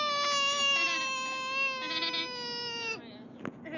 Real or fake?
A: real